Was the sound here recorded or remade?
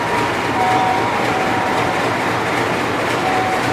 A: remade